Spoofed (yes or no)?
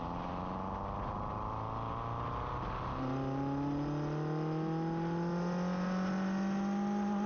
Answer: no